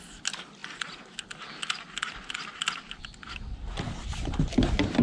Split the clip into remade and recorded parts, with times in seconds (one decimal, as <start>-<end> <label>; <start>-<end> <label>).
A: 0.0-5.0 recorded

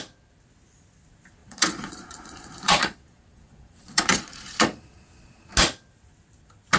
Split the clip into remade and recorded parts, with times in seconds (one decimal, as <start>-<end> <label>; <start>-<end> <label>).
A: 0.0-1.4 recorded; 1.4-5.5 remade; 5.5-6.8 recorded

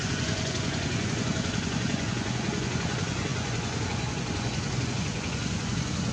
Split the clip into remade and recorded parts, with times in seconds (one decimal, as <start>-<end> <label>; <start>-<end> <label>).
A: 0.0-6.1 remade

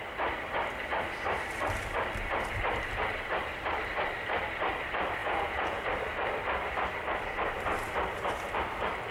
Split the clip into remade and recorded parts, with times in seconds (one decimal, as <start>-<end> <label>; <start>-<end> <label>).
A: 0.0-5.2 recorded; 5.2-5.8 remade; 5.8-9.1 recorded